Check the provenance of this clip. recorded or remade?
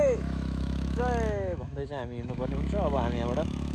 remade